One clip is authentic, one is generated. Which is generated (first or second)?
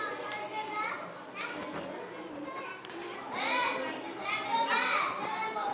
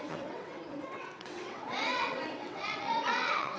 second